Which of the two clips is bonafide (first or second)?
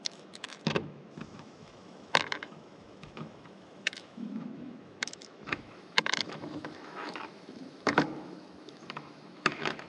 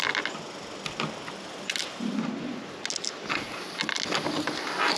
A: second